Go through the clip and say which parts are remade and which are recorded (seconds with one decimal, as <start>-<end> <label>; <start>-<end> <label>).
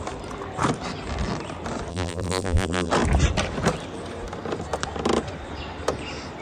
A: 0.0-1.9 recorded; 1.9-2.9 remade; 2.9-6.4 recorded